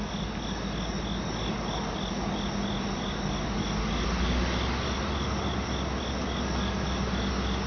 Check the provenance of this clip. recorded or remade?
recorded